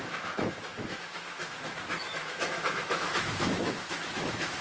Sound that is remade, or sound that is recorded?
remade